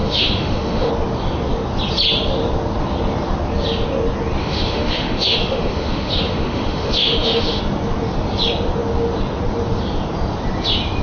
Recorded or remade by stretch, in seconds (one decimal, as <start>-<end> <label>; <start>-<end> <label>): 0.0-0.9 remade; 0.9-4.4 recorded; 4.4-7.6 remade; 7.6-11.0 recorded